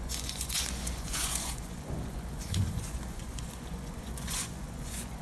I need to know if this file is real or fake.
fake